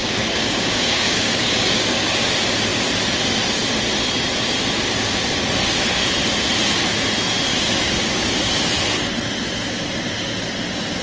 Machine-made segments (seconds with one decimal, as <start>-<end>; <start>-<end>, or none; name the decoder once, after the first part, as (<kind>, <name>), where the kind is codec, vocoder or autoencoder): 0.0-2.1 (codec, DAC); 7.5-8.3